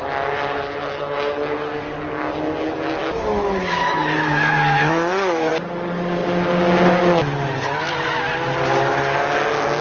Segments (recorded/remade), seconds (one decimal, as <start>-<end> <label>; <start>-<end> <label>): 0.0-3.0 recorded; 3.0-5.5 remade; 5.5-9.8 recorded